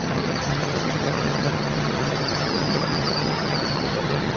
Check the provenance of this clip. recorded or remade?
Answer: remade